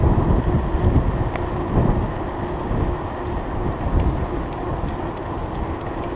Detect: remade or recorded recorded